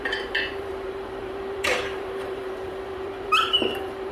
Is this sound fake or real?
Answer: fake